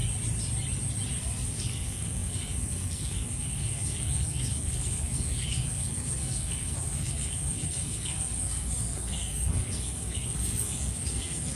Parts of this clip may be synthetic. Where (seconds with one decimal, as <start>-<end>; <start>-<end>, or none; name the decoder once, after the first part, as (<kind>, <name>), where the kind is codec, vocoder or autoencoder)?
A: 1.2-11.6 (codec, SNAC)